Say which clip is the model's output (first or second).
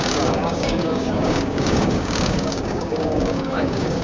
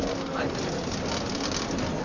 first